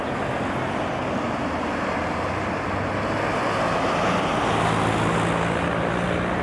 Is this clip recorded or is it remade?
recorded